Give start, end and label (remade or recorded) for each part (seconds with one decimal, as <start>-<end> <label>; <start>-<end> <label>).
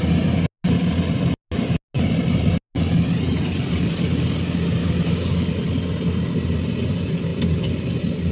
0.0-4.8 recorded; 4.8-5.5 remade; 5.5-8.3 recorded